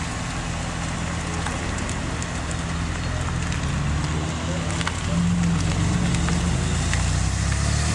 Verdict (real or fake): real